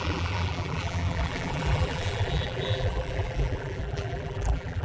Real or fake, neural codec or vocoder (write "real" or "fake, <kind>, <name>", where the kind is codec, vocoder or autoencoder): fake, vocoder, BigVGAN v2